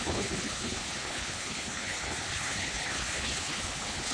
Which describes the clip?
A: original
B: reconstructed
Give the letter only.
B